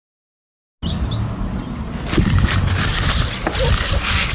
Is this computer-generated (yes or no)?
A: no